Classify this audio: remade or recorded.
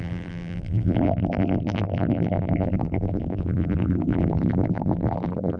remade